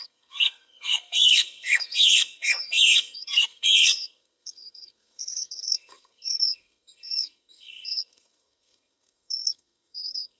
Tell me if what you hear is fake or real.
fake